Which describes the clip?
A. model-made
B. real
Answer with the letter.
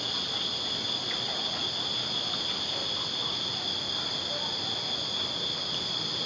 B